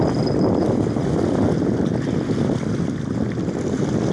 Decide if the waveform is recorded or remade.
recorded